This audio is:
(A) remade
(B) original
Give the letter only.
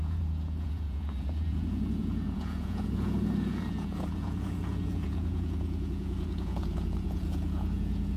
A